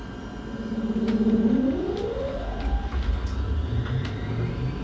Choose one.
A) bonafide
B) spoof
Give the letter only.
A